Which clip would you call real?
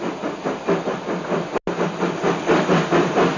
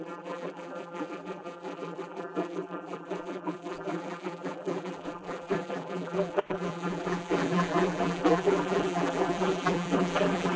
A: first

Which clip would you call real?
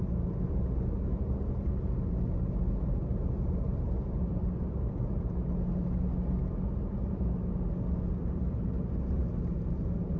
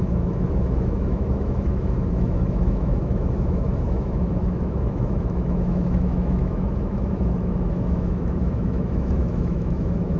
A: first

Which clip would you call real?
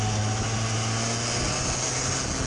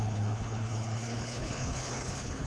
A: first